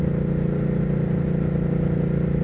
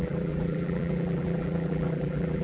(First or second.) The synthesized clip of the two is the second